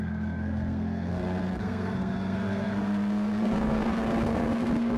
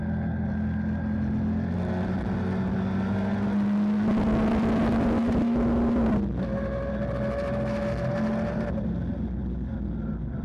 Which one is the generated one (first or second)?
first